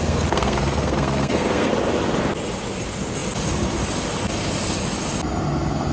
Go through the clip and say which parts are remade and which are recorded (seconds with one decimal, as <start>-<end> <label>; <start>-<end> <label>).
0.0-1.7 remade; 1.7-5.9 recorded